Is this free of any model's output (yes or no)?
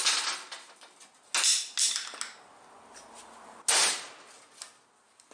yes